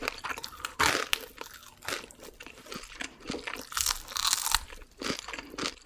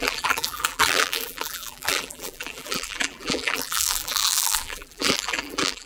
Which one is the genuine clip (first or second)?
first